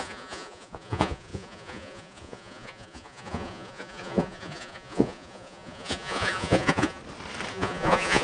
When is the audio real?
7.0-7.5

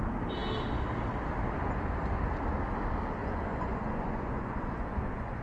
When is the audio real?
0.0-3.2

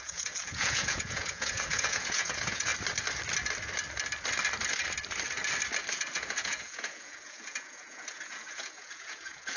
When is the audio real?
2.7-5.9

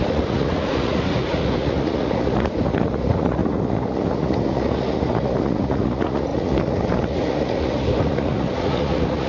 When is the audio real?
none

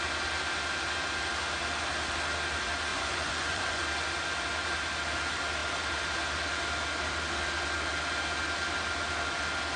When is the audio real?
0.0-2.9; 3.8-9.8

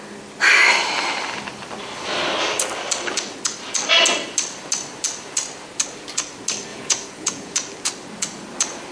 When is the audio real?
0.0-6.7; 7.5-8.9